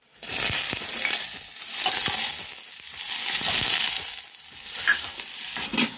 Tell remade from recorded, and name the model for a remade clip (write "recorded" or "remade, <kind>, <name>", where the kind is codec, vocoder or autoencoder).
recorded